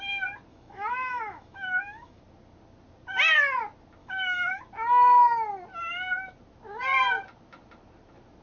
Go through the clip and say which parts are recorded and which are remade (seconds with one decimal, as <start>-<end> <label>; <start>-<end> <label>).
0.0-0.5 recorded; 0.5-2.2 remade; 2.2-4.0 recorded; 4.0-4.6 remade; 4.6-8.4 recorded